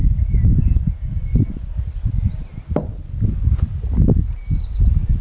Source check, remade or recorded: recorded